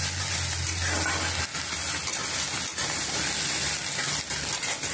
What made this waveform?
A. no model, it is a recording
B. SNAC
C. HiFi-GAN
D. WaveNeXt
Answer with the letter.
A